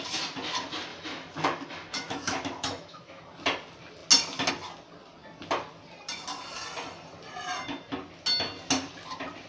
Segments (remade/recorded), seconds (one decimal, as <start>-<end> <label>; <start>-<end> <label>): 0.0-0.9 recorded; 0.9-3.2 remade; 3.2-9.5 recorded